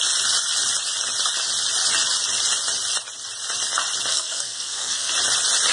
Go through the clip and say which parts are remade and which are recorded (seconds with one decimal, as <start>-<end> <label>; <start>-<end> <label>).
0.0-4.1 recorded; 4.1-5.1 remade; 5.1-5.7 recorded